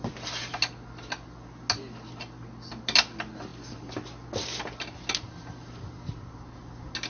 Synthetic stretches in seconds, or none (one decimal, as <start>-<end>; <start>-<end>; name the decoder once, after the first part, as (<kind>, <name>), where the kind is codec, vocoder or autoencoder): none